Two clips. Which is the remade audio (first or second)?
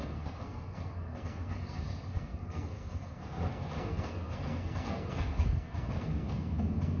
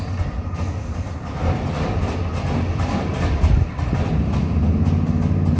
first